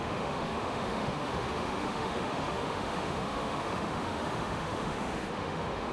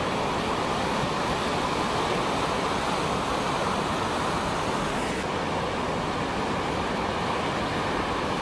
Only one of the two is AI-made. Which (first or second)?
first